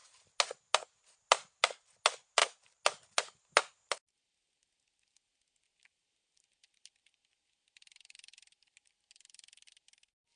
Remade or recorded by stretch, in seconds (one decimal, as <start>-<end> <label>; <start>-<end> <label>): 0.0-10.4 recorded